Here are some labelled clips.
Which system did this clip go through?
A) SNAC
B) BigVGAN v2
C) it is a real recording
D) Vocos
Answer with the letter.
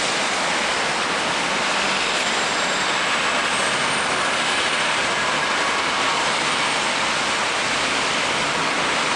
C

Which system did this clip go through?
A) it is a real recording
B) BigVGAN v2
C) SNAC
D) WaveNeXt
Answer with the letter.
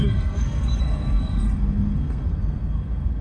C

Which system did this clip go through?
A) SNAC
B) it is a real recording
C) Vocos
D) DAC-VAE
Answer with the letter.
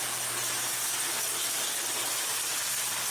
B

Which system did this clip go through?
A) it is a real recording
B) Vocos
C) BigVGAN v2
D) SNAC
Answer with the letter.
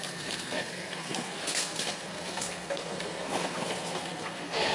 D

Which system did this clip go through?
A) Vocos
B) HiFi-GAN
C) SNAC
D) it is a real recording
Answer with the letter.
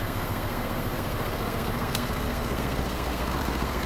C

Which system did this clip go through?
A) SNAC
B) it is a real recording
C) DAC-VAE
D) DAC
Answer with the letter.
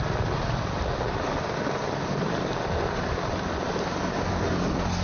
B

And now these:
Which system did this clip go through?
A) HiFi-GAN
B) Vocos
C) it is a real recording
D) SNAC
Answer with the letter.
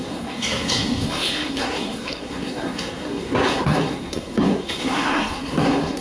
D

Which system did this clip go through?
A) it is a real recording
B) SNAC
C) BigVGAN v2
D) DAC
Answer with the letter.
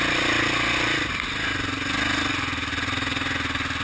A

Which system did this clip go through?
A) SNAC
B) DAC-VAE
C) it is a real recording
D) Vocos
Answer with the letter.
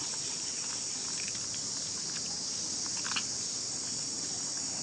C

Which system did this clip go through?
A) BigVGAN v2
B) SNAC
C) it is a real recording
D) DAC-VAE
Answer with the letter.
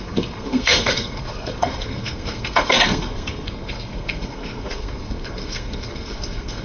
B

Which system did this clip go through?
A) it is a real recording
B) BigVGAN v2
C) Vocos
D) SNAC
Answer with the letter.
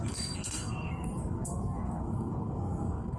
D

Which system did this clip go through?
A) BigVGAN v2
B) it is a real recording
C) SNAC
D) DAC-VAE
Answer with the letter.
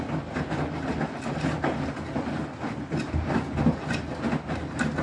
B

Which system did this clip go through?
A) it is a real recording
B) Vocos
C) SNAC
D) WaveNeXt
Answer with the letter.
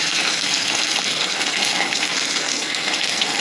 C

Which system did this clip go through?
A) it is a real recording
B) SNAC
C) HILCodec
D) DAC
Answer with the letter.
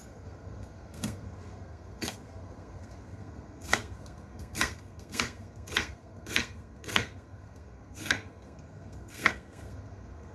B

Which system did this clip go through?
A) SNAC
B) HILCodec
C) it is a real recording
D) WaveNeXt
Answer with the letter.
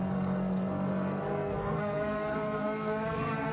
A